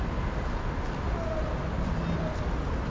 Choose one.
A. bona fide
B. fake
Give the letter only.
A